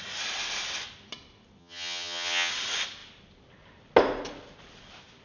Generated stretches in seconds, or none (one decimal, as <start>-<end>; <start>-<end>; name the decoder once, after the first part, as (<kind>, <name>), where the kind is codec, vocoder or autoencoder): 1.6-2.5 (vocoder, HiFi-GAN)